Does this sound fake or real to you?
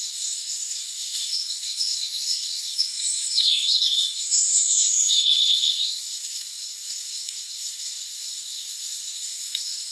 fake